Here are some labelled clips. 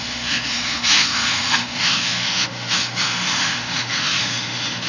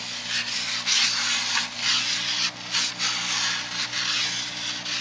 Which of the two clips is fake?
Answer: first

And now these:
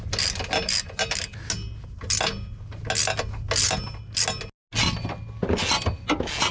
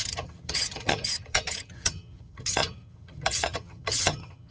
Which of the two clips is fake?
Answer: second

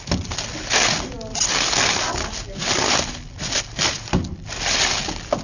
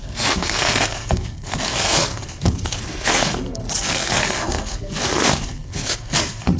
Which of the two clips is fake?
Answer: second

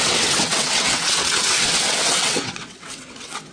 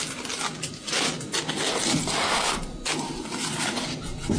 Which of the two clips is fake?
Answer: first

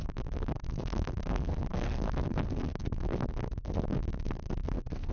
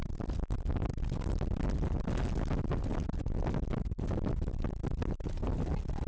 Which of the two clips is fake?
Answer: first